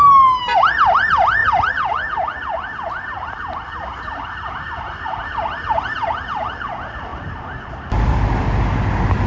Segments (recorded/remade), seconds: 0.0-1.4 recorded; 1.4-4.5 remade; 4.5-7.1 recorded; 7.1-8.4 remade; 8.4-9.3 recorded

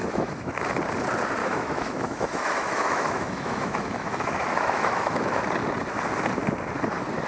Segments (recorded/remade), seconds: 0.0-0.5 remade; 0.5-1.4 recorded; 1.4-5.4 remade; 5.4-7.3 recorded